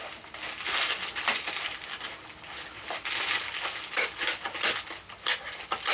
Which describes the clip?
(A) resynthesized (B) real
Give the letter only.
B